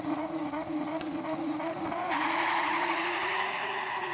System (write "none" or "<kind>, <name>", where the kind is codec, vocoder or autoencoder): vocoder, Vocos